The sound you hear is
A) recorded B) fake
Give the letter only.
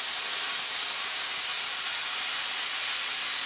A